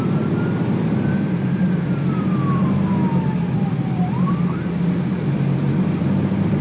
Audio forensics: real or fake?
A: fake